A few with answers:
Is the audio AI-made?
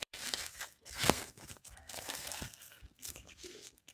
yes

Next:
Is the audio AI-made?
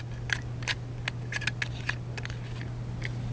no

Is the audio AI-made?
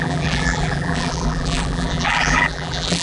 yes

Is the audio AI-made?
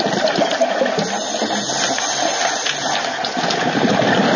no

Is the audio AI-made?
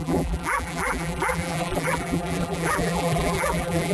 yes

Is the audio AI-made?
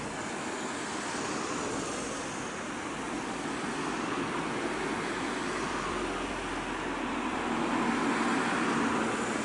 no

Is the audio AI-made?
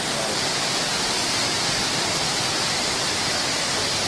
no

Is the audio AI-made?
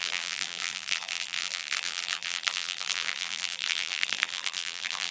yes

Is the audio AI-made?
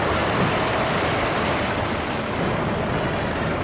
no